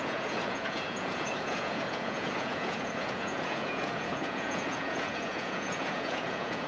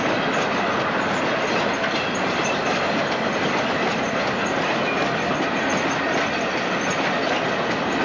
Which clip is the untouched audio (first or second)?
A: second